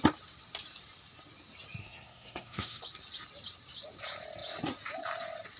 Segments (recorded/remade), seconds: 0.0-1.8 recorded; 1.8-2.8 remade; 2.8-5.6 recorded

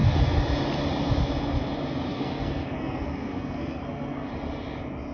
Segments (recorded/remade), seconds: 0.0-2.1 recorded; 2.1-4.3 remade; 4.3-5.1 recorded

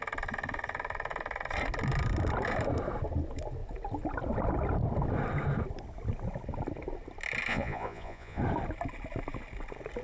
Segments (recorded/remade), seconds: 0.0-7.5 recorded; 7.5-8.4 remade; 8.4-10.0 recorded